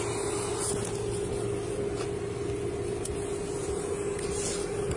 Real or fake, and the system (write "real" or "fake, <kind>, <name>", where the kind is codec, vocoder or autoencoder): real